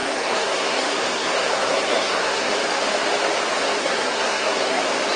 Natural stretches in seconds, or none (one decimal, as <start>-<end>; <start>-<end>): 2.5-3.8; 4.8-5.2